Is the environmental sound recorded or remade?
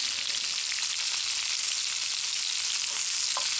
recorded